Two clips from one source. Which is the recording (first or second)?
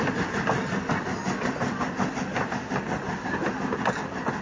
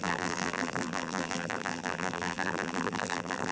first